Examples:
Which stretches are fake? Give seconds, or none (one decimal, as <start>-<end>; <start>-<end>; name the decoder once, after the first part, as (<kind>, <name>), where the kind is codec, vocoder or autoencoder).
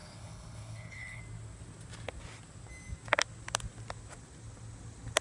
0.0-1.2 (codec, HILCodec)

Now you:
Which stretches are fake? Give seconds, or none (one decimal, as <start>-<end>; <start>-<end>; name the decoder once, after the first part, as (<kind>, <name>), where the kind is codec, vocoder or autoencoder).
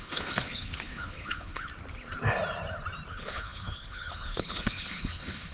0.0-1.7 (codec, HILCodec); 3.1-5.5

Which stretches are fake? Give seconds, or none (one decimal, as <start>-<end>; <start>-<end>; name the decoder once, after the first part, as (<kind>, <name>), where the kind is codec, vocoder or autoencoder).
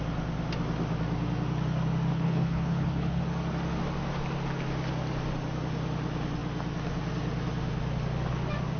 2.1-3.2 (codec, HILCodec)